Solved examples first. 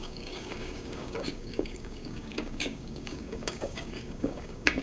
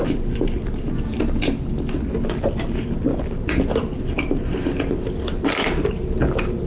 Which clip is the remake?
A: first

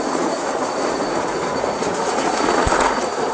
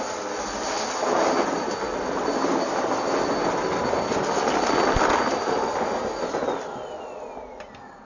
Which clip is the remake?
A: first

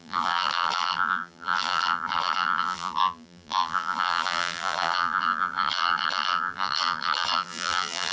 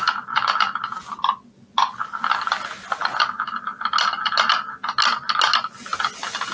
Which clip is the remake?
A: first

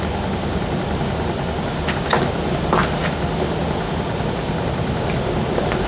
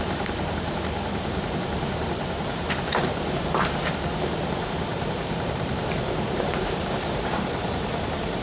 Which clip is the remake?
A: second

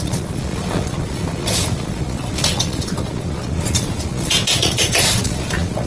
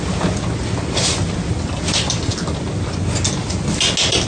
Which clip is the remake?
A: first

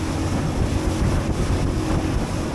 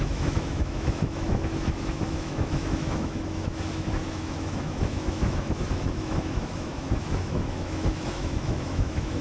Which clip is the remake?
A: second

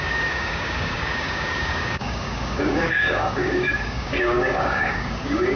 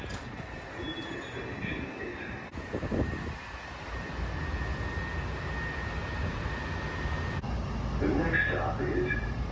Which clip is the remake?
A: first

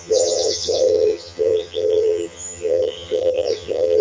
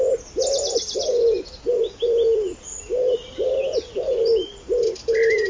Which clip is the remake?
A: first